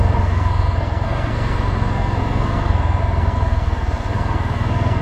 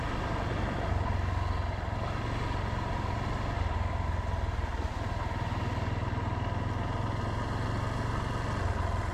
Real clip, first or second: second